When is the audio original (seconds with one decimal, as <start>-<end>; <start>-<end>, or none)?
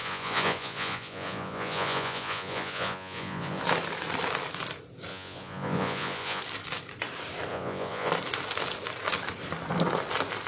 3.6-5.1; 6.4-7.5; 8.1-10.5